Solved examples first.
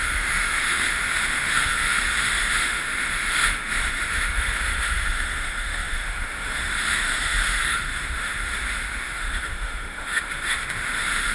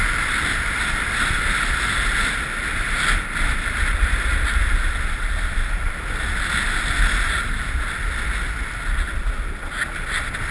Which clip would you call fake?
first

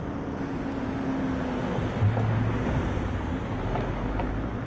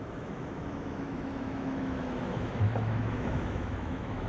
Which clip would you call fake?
second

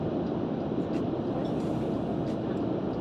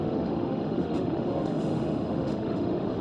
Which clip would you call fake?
second